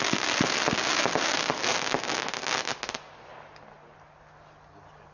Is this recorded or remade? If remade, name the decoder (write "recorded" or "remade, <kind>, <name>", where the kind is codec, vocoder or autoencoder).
recorded